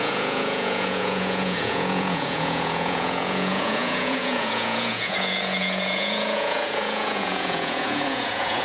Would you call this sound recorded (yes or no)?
no